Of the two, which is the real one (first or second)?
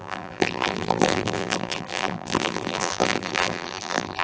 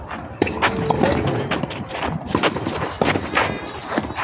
second